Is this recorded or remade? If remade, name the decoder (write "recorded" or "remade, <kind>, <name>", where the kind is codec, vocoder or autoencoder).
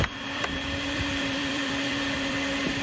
remade, vocoder, BigVGAN v2